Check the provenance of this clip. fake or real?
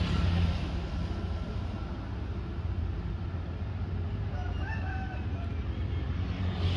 real